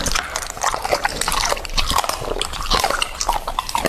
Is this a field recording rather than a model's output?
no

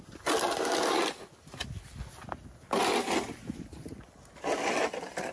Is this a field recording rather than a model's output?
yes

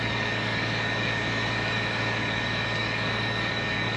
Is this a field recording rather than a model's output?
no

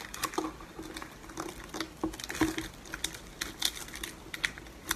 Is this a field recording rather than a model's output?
yes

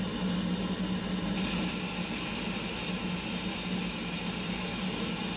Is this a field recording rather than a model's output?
yes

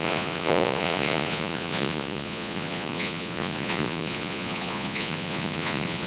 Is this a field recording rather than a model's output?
no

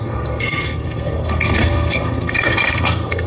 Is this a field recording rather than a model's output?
no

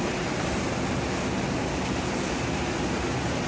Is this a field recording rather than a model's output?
yes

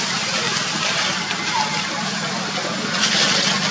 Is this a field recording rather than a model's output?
yes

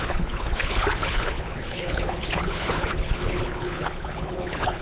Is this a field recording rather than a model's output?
no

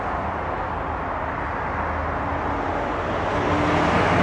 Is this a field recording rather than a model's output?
yes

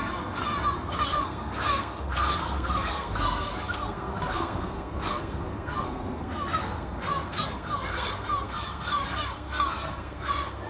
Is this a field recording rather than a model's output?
no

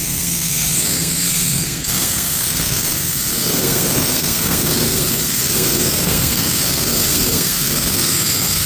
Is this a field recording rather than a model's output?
no